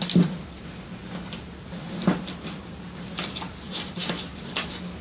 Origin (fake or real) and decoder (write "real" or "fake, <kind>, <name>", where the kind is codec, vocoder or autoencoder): real